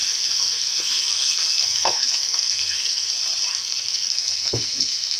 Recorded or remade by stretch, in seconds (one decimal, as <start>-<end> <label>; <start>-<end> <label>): 0.0-3.1 remade; 3.1-3.5 recorded; 3.5-5.2 remade